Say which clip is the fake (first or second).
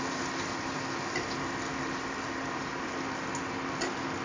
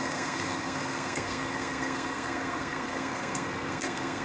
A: second